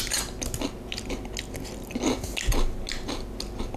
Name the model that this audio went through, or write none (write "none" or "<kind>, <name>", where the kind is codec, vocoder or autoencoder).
none